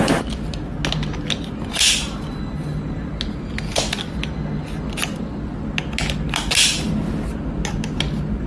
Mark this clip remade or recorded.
recorded